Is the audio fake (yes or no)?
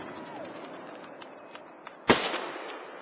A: no